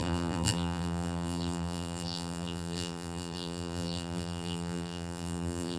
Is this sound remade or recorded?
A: remade